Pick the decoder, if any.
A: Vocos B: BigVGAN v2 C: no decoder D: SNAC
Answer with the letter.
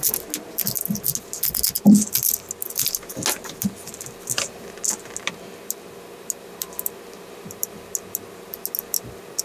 C